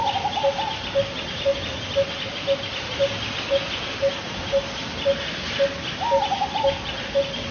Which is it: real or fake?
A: real